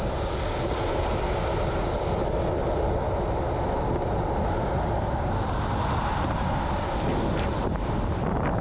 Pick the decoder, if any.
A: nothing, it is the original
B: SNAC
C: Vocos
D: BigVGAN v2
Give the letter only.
A